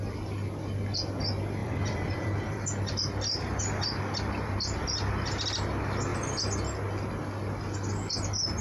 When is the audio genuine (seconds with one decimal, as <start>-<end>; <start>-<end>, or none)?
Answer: 0.0-1.6; 3.6-8.6